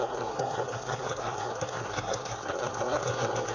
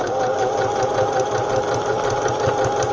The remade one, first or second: first